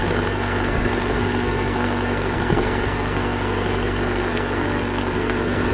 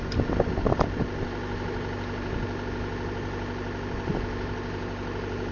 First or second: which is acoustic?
second